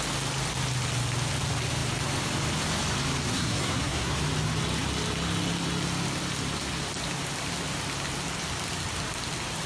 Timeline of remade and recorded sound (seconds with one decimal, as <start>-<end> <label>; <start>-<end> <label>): 0.0-3.3 recorded; 3.3-4.2 remade; 4.2-9.7 recorded